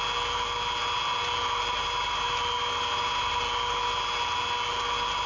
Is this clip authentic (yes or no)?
yes